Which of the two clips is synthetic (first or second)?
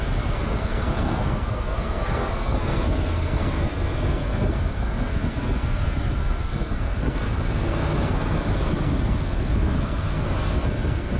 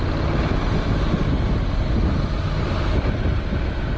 first